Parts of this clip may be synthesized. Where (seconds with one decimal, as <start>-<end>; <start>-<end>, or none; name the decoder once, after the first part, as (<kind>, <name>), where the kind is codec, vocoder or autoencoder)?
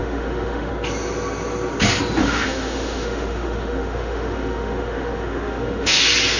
0.0-0.7 (autoencoder, DAC-VAE); 2.2-6.0